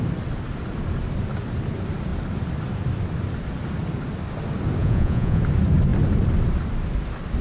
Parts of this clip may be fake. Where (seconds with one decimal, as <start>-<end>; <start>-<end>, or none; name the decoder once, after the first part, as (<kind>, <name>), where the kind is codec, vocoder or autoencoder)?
4.8-5.4 (vocoder, Vocos)